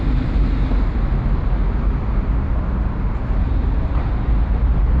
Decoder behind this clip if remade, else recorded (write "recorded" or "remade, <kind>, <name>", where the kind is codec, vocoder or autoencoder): recorded